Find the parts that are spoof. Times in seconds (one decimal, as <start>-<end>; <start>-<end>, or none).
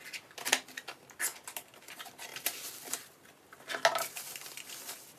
none